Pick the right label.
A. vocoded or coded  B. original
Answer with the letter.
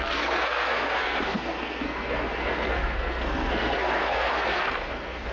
A